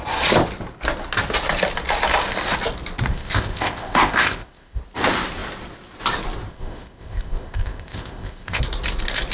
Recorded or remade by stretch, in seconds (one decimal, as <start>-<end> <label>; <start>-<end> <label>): 0.0-3.1 recorded; 3.1-4.8 remade; 4.8-6.5 recorded; 6.5-8.6 remade; 8.6-9.3 recorded